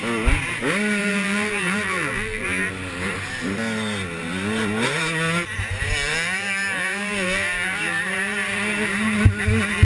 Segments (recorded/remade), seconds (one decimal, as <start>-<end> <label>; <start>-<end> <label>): 0.0-1.0 recorded; 1.0-2.7 remade; 2.7-6.1 recorded; 6.1-8.0 remade; 8.0-9.8 recorded